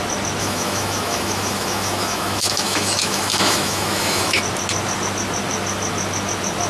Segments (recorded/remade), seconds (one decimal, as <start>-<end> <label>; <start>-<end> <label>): 0.0-0.4 recorded; 0.4-4.4 remade; 4.4-6.7 recorded